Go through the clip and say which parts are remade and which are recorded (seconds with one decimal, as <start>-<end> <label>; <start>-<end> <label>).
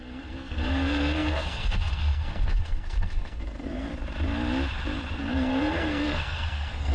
0.0-3.9 remade; 3.9-5.2 recorded; 5.2-6.9 remade